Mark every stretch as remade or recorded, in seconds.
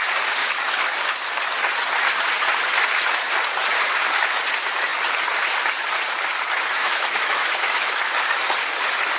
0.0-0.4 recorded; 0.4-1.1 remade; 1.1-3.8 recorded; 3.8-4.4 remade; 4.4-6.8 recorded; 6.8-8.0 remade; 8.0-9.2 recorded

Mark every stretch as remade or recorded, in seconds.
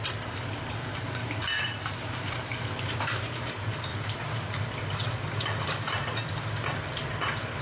0.0-6.2 remade; 6.2-7.1 recorded; 7.1-7.6 remade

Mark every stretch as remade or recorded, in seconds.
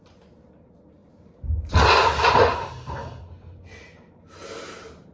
0.0-5.1 recorded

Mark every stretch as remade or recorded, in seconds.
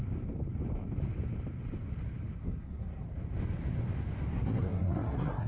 0.0-2.4 recorded; 2.4-3.0 remade; 3.0-4.3 recorded; 4.3-5.5 remade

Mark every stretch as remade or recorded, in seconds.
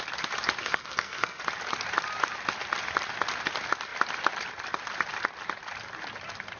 0.0-0.6 recorded; 0.6-1.4 remade; 1.4-6.6 recorded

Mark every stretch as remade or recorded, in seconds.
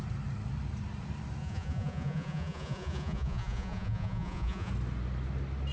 0.0-1.4 recorded; 1.4-4.7 remade; 4.7-5.7 recorded